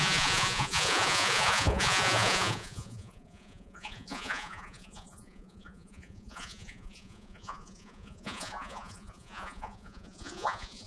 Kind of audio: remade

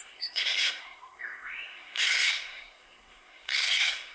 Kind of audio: remade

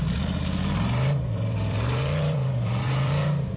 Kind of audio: remade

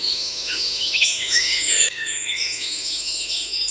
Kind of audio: remade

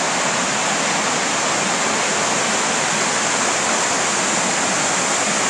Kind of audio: recorded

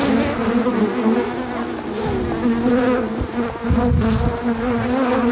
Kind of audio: recorded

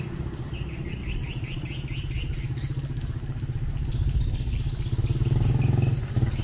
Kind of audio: recorded